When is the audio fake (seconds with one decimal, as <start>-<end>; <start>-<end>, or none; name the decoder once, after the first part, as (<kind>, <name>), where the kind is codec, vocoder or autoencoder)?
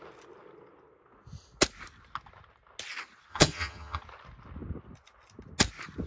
3.3-4.0 (vocoder, HiFi-GAN)